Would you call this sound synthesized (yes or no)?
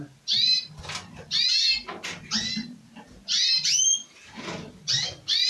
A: no